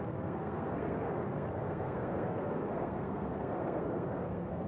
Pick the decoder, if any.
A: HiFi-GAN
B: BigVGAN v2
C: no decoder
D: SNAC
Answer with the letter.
D